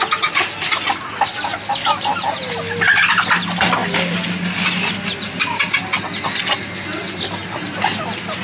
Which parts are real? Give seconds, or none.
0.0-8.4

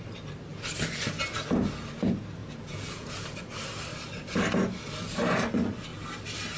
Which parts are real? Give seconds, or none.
0.0-2.4; 3.1-6.6

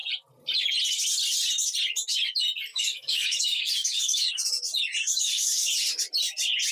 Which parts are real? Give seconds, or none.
0.0-2.7; 4.3-5.1; 5.7-6.7